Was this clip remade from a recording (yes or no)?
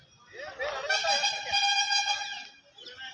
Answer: no